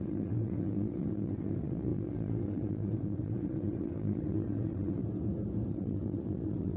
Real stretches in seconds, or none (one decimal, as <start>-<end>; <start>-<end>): 5.0-5.7